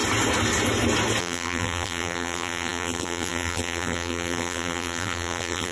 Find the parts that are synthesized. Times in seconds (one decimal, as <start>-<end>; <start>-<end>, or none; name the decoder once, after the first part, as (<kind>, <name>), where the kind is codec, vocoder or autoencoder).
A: 1.2-5.7 (vocoder, BigVGAN v2)